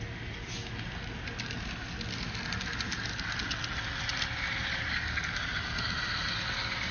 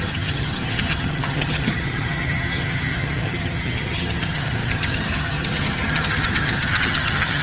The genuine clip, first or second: first